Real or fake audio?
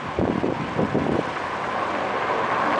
real